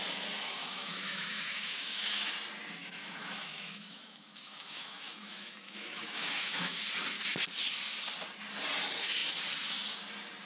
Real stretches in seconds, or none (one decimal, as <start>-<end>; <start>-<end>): 0.0-0.6; 2.3-2.8; 6.8-10.5